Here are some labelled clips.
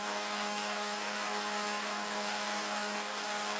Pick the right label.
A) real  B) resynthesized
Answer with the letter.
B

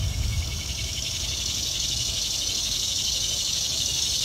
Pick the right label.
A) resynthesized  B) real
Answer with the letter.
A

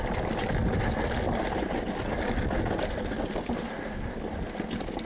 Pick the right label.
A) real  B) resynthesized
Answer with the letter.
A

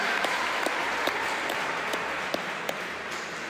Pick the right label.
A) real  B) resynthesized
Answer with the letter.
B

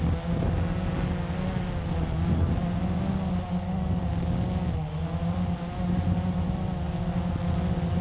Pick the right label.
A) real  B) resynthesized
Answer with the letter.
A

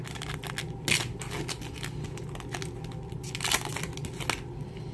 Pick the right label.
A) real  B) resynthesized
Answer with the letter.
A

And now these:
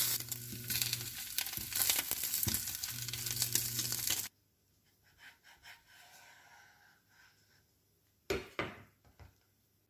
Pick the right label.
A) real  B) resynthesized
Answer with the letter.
A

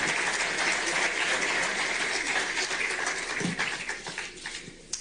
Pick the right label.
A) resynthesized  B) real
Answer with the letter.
B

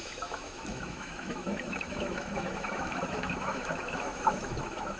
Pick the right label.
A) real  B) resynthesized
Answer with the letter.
B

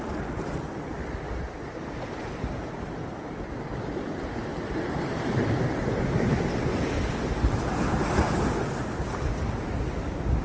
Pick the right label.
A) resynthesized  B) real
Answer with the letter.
B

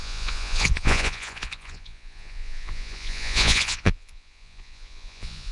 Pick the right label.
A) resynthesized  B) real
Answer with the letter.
A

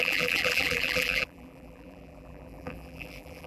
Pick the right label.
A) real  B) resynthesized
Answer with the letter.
B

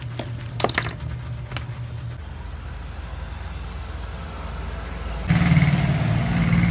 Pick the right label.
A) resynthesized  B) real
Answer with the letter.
B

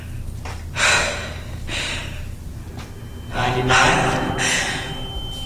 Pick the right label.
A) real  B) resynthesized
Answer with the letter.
A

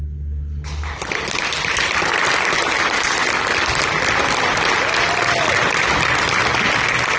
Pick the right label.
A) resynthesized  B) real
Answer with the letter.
B